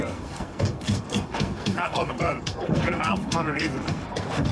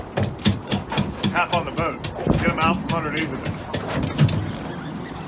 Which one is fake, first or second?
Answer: first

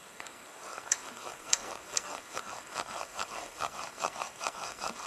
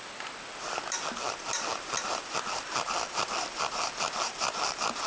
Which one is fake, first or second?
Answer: first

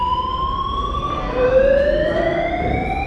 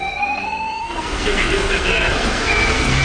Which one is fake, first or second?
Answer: second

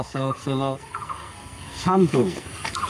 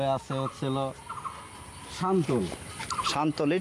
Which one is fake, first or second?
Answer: first